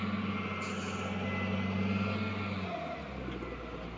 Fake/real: real